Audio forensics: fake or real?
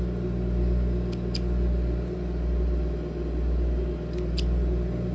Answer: real